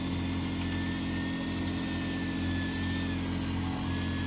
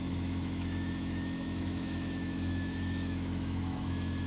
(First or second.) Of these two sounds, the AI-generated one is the second